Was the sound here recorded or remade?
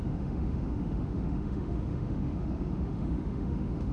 remade